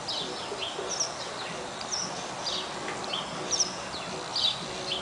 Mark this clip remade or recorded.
recorded